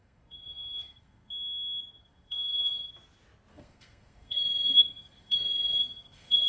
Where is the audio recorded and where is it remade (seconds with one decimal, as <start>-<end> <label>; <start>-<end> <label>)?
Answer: 0.0-1.3 remade; 1.3-2.0 recorded; 2.0-2.9 remade; 2.9-3.5 recorded; 3.5-6.5 remade